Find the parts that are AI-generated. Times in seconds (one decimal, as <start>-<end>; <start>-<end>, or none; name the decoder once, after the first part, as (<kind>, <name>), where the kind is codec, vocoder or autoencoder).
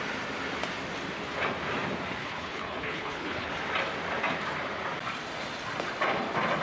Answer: 2.2-3.5 (codec, HILCodec)